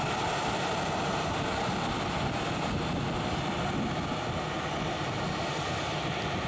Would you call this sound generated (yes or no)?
no